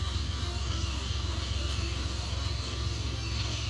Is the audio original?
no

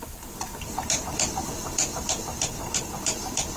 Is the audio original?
no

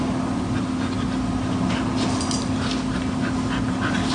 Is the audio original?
yes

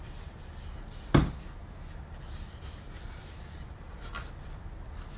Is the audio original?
yes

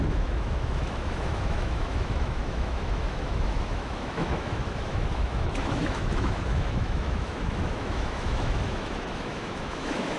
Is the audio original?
no